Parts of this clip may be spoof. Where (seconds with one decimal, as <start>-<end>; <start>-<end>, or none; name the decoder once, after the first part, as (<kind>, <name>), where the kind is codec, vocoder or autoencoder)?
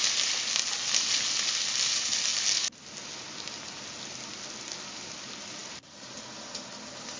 none